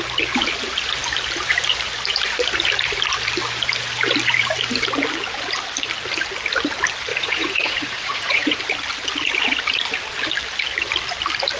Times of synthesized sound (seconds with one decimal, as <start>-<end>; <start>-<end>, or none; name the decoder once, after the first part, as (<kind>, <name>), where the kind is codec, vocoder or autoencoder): 7.1-8.6 (vocoder, Vocos)